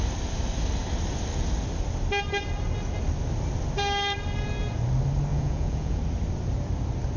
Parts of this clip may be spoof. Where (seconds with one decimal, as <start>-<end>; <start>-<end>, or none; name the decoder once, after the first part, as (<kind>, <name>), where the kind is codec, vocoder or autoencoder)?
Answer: 5.3-6.0 (vocoder, Vocos)